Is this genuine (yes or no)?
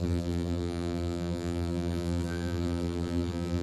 no